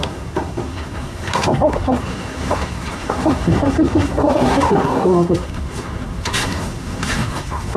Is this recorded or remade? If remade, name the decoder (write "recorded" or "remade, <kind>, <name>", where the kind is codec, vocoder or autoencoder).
remade, codec, SNAC